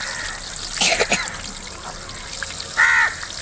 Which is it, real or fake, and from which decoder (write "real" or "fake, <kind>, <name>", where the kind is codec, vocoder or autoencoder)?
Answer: real